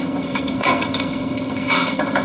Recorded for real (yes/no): no